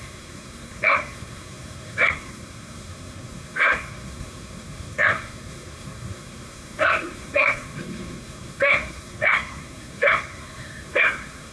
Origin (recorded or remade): remade